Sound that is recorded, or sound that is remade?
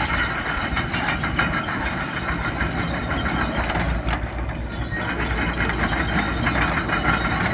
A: recorded